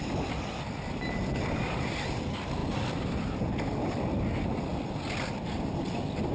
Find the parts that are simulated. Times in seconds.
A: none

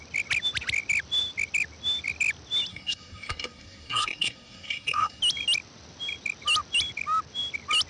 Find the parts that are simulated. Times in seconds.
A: 2.7-5.2

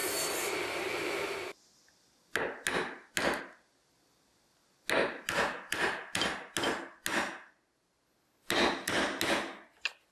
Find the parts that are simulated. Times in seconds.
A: none

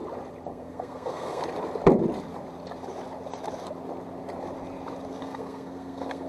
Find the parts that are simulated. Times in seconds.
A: 0.5-1.4; 5.2-6.3

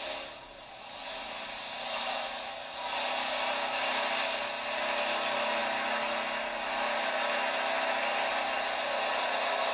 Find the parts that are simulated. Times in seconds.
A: none

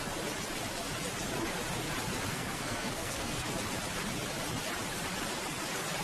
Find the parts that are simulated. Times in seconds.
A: 2.3-3.5